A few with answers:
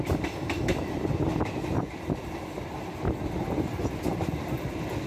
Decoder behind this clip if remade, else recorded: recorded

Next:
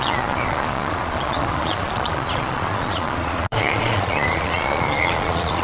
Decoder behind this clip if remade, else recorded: remade, vocoder, Vocos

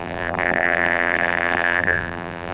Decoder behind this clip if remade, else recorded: remade, vocoder, BigVGAN v2